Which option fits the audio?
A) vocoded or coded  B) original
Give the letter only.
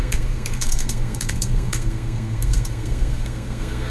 A